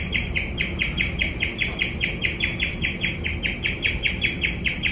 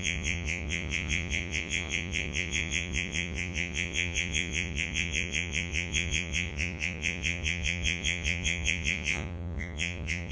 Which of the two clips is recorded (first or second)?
first